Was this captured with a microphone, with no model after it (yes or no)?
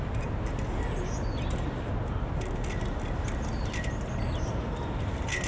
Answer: yes